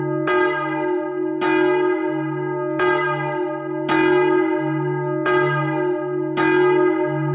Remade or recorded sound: recorded